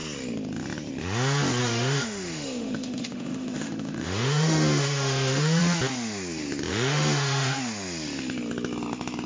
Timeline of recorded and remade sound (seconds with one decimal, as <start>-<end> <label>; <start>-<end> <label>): 0.0-1.6 recorded; 1.6-5.6 remade; 5.6-6.7 recorded; 6.7-7.6 remade; 7.6-9.3 recorded